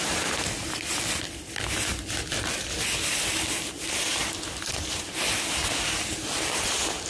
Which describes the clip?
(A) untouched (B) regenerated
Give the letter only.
A